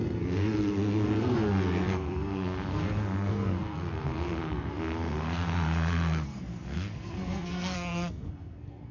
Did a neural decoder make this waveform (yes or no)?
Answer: yes